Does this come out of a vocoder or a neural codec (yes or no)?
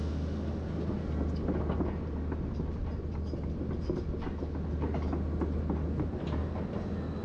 no